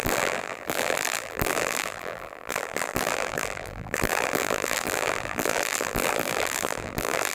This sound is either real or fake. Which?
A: fake